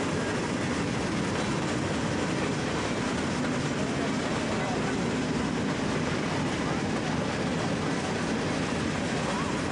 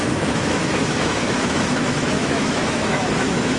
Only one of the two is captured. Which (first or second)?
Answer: first